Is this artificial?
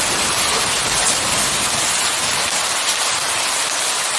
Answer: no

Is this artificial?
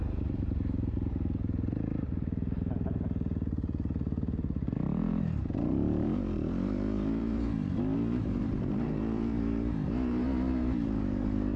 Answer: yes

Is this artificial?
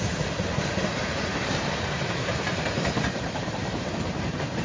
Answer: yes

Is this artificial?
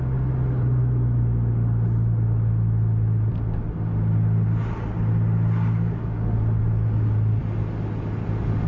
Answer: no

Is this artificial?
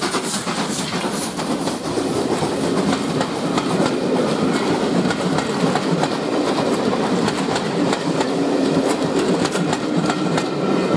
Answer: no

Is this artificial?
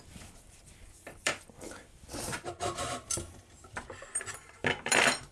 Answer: yes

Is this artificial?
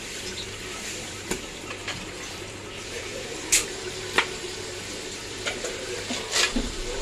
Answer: yes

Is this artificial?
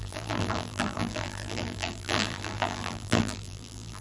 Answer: yes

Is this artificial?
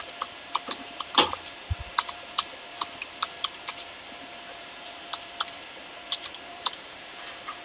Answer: yes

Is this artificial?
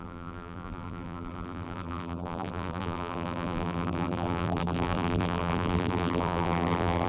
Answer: yes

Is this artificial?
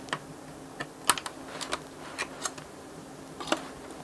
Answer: no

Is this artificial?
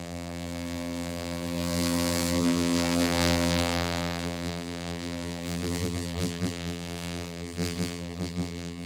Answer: yes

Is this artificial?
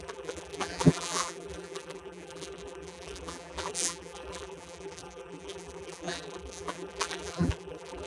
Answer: yes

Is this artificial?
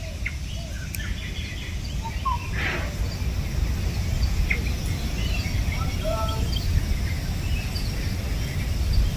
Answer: no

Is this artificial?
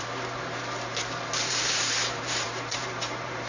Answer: yes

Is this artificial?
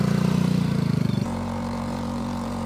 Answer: yes